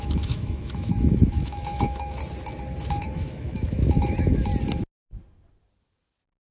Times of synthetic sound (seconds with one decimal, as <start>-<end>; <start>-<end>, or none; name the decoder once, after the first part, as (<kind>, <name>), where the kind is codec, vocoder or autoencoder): 0.0-2.2 (autoencoder, DAC-VAE); 2.9-4.5